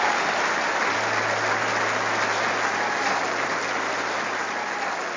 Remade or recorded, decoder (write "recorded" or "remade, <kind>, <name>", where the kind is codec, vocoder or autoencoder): recorded